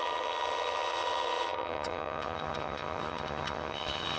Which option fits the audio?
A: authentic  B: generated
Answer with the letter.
B